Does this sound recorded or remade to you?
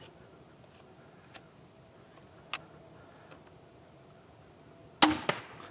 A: recorded